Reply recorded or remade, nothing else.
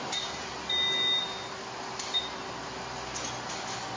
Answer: recorded